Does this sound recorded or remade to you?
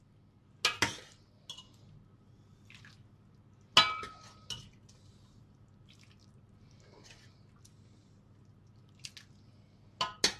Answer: recorded